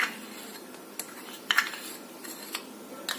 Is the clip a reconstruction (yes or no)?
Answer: no